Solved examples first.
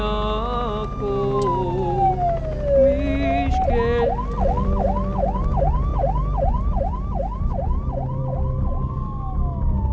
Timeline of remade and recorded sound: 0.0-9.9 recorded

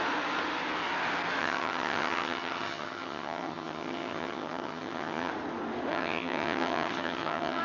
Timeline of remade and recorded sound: 0.0-1.4 recorded; 1.4-5.3 remade; 5.3-5.9 recorded; 5.9-7.6 remade

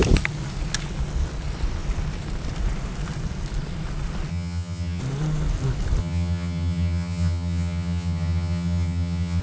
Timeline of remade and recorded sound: 0.0-4.3 recorded; 4.3-5.0 remade; 5.0-6.0 recorded; 6.0-9.4 remade

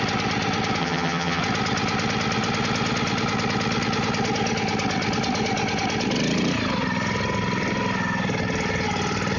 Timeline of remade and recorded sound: 0.0-0.8 recorded; 0.8-1.4 remade; 1.4-9.4 recorded

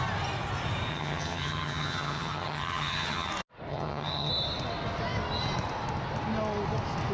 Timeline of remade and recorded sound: 0.0-0.9 recorded; 0.9-3.3 remade; 3.3-3.7 recorded; 3.7-4.3 remade; 4.3-7.1 recorded

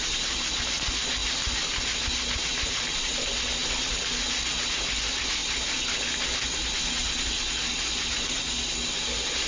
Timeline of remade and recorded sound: 0.0-9.5 recorded